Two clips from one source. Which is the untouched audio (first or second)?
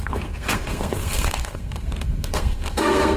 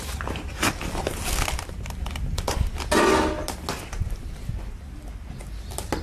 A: second